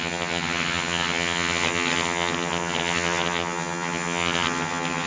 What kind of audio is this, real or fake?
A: fake